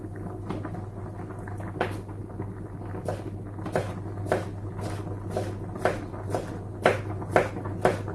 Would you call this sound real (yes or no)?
yes